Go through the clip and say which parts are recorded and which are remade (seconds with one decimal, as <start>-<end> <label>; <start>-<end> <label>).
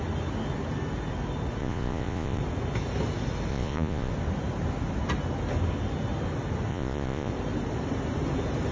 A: 0.0-1.6 recorded; 1.6-2.4 remade; 2.4-3.5 recorded; 3.5-4.1 remade; 4.1-6.7 recorded; 6.7-7.3 remade; 7.3-8.7 recorded